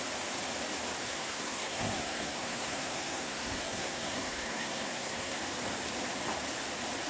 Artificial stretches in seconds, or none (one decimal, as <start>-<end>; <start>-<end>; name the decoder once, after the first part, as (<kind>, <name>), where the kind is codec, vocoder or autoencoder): 1.1-5.4 (codec, SNAC)